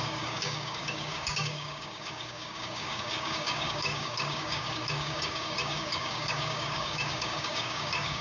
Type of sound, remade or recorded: remade